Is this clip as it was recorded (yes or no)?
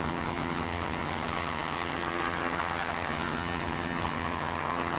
no